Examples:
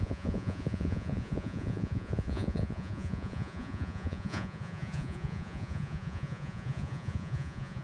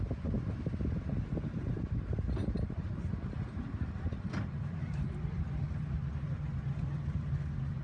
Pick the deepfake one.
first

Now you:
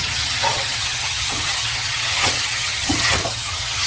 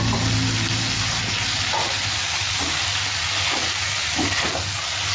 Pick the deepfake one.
first